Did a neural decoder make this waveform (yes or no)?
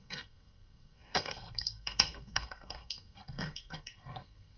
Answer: yes